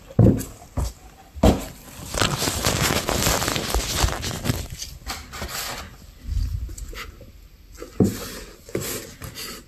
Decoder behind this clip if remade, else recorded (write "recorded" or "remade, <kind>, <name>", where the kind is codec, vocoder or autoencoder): recorded